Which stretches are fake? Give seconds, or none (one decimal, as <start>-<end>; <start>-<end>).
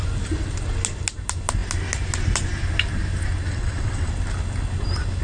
3.5-4.1